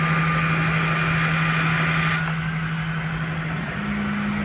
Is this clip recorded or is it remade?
recorded